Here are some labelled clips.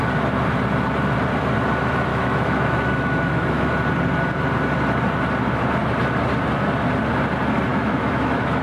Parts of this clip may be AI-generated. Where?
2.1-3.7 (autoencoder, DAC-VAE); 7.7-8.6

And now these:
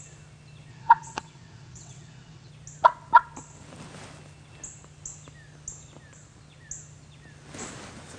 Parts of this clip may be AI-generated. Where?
0.7-2.5 (vocoder, WaveNeXt)

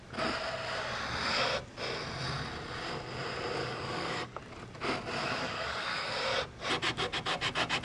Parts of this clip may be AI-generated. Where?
3.6-4.4 (codec, DAC); 5.2-6.1

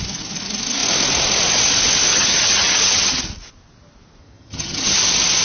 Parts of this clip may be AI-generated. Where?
2.1-3.2 (vocoder, HiFi-GAN); 4.2-5.0

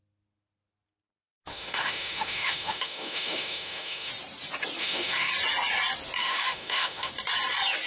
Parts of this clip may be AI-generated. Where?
1.5-4.1 (autoencoder, DAC-VAE); 4.8-5.3; 6.2-7.1

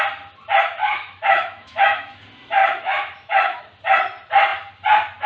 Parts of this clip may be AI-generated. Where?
0.8-2.2 (autoencoder, DAC-VAE); 2.6-3.6

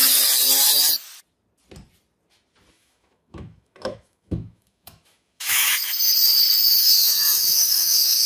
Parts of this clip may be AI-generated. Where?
2.7-5.8 (autoencoder, DAC-VAE); 6.8-8.3